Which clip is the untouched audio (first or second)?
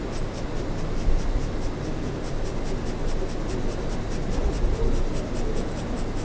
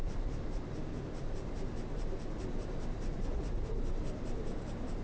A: first